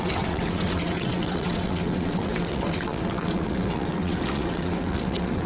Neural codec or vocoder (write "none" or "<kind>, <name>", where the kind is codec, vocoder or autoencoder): vocoder, WaveNeXt